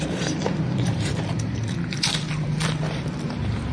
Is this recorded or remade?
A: remade